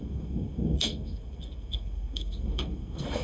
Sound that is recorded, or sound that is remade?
remade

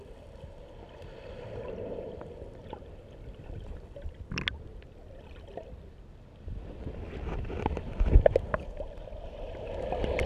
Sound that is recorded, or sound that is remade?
recorded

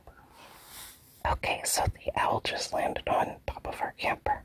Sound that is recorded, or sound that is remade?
recorded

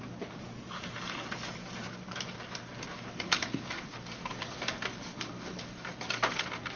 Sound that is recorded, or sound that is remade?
recorded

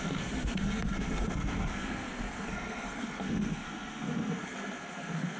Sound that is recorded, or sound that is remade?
remade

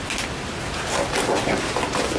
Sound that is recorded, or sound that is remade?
recorded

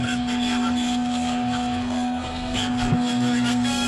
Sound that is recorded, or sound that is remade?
remade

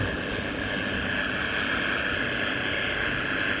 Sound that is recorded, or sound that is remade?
recorded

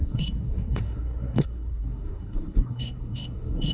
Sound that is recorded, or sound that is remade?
remade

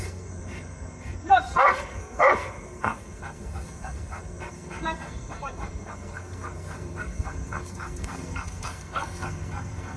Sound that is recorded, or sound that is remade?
remade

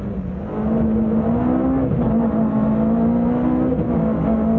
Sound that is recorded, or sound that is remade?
recorded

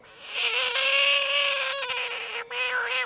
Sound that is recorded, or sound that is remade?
recorded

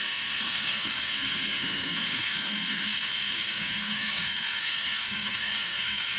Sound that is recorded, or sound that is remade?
remade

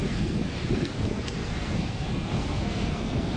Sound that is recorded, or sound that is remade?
remade